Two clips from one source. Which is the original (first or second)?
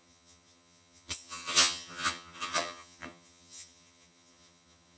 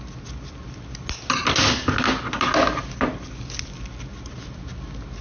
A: second